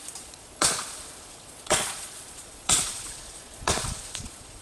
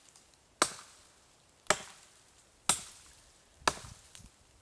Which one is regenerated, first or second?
first